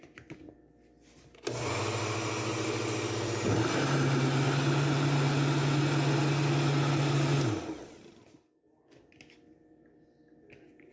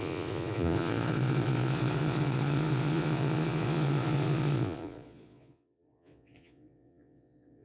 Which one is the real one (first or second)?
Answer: first